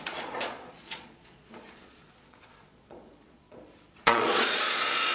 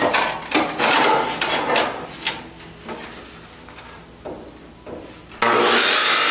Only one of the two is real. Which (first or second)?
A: second